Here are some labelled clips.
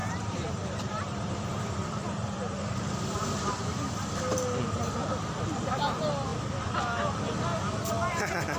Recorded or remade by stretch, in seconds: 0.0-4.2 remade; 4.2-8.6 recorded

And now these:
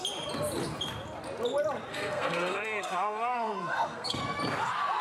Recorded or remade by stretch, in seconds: 0.0-1.9 recorded; 1.9-4.2 remade; 4.2-5.0 recorded

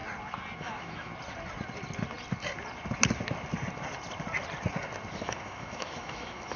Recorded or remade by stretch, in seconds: 0.0-0.6 recorded; 0.6-1.1 remade; 1.1-5.1 recorded; 5.1-6.6 remade